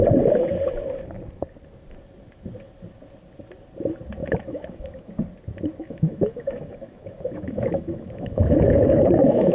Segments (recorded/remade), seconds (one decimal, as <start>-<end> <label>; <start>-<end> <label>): 0.0-4.2 recorded; 4.2-5.1 remade; 5.1-5.8 recorded; 5.8-9.5 remade